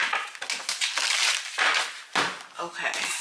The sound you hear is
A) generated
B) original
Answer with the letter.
B